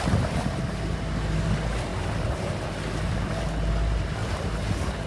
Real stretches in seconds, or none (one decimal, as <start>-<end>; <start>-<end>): 0.0-1.9; 3.3-4.2